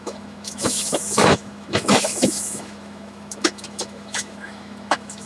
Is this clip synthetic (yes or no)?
yes